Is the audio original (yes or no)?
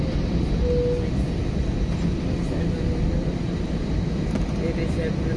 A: yes